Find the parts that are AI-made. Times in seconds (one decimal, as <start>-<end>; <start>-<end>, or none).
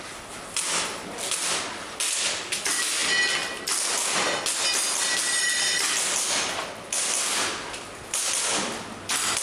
none